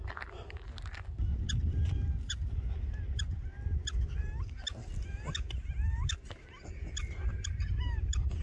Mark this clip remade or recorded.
recorded